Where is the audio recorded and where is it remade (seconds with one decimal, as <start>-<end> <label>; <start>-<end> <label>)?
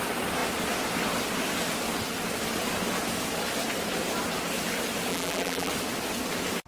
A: 0.0-5.1 recorded; 5.1-5.7 remade; 5.7-6.7 recorded